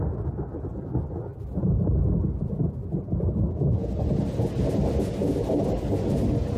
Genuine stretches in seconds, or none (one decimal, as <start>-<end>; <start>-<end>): 0.0-1.3; 2.1-6.6